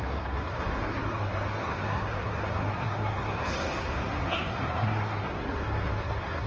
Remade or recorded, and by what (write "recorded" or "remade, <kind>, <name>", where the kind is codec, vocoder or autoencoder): remade, codec, SNAC